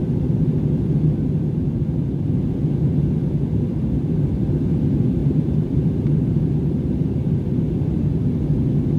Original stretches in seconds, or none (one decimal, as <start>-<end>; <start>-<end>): 0.0-5.2; 7.4-9.0